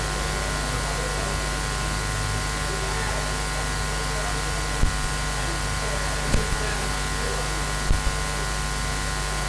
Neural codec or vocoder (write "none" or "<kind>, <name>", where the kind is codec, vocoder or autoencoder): none